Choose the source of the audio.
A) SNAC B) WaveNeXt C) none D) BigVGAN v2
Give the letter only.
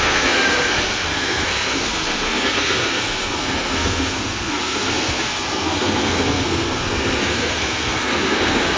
A